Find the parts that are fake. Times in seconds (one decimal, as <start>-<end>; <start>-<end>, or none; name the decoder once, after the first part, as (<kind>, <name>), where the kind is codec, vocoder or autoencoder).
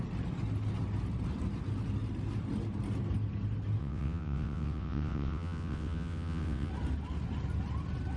3.8-6.7 (vocoder, WaveNeXt)